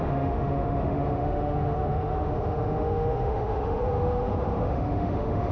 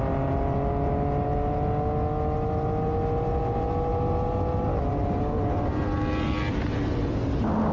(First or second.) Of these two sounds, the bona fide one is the second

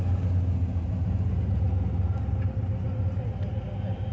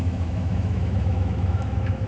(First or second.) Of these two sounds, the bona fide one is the first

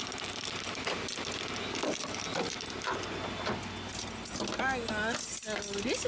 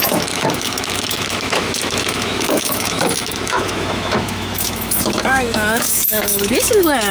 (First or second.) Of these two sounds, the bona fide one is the first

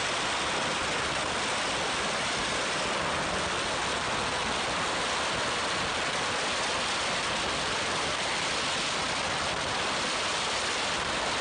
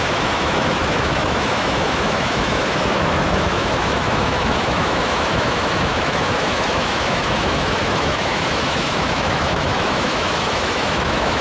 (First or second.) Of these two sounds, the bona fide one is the first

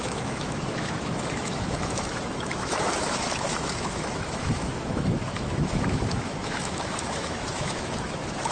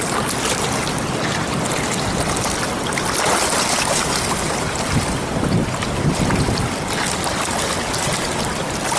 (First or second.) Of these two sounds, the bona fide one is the second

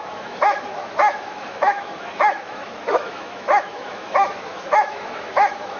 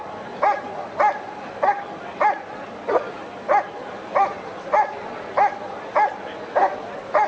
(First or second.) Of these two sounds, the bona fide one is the second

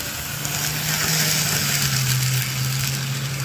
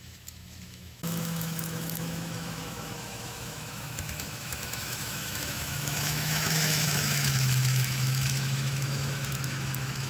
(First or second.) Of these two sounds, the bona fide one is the first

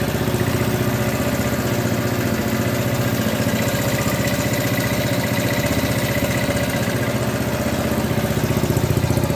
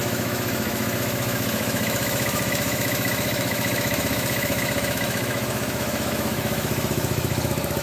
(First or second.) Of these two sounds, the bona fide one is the first